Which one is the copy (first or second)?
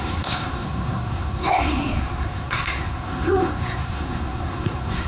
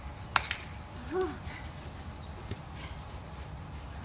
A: first